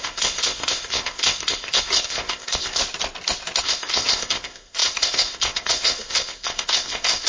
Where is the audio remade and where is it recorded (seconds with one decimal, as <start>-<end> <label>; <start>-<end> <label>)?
0.0-2.8 remade; 2.8-3.6 recorded; 3.6-7.3 remade